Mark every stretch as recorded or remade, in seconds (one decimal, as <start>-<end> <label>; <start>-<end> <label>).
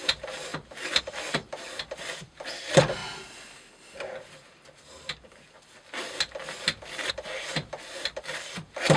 0.0-3.0 remade; 3.0-7.1 recorded; 7.1-9.0 remade